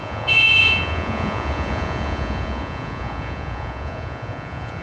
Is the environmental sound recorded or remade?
remade